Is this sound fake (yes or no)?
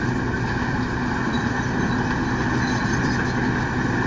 no